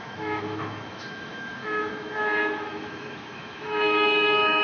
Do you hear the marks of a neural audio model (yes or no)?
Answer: yes